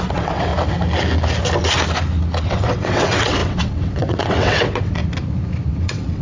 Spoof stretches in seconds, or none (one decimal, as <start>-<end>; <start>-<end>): 0.0-0.5; 2.4-5.0; 5.7-6.2

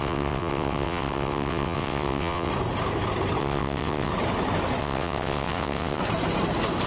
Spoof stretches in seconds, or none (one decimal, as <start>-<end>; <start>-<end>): 0.0-2.5; 3.4-4.1; 4.8-6.0

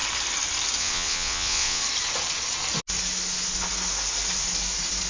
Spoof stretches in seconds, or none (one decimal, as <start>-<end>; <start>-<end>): 0.8-1.8